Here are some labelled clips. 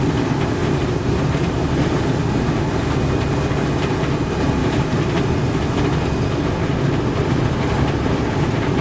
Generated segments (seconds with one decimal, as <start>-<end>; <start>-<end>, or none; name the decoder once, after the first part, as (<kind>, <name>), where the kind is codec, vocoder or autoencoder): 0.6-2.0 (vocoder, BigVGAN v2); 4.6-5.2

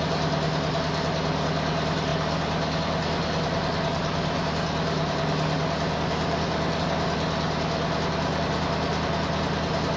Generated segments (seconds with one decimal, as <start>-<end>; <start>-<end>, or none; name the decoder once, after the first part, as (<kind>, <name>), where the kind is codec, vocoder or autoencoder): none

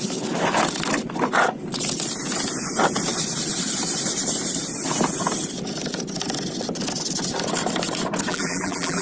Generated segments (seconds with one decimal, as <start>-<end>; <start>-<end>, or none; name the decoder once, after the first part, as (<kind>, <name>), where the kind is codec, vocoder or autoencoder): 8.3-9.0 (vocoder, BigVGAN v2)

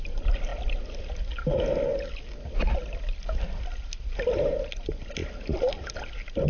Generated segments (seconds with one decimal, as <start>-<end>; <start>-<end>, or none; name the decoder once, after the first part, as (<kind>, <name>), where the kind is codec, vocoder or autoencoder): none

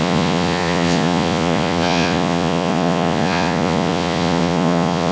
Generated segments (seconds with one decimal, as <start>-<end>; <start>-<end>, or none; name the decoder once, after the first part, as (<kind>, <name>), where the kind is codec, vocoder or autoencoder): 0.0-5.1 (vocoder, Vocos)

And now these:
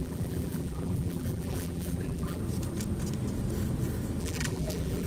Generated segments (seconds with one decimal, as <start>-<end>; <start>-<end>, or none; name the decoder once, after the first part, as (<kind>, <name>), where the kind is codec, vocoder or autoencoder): 0.0-2.4 (vocoder, BigVGAN v2); 4.2-5.1

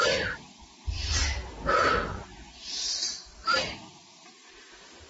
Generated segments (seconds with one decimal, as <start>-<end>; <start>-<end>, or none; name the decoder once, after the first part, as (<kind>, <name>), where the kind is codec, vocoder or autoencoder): 0.0-1.2 (vocoder, BigVGAN v2); 3.0-3.4; 3.9-5.1

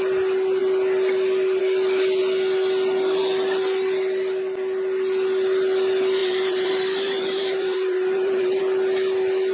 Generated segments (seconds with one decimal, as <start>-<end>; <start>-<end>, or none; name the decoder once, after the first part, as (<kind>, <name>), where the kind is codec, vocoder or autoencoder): 6.2-8.6 (vocoder, BigVGAN v2)